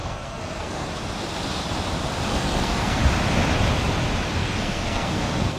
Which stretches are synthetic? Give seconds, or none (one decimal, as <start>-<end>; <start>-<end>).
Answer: 0.0-0.9; 2.3-3.0; 4.4-5.6

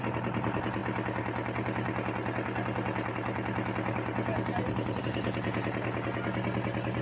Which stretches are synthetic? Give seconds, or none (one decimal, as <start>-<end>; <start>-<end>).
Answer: none

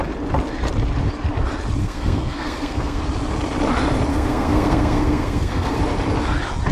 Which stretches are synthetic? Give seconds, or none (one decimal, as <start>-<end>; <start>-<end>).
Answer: 1.8-3.0; 4.1-5.8

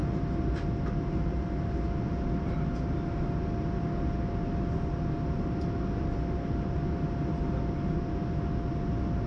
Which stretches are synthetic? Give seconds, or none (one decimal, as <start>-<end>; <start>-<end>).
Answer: none

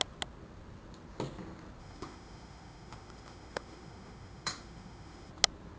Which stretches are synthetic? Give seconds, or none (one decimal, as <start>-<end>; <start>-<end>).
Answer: 1.8-5.3

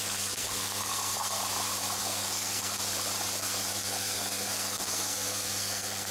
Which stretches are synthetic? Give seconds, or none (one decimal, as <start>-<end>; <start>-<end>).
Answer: 0.0-1.4; 2.0-2.8; 3.4-6.1

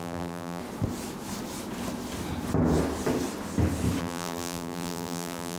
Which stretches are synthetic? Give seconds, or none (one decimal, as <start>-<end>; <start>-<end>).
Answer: 0.0-0.6; 4.0-5.6